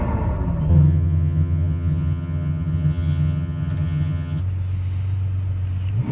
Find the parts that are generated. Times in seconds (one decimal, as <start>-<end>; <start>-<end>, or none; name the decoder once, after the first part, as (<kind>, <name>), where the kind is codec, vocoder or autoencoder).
0.7-4.4 (vocoder, HiFi-GAN)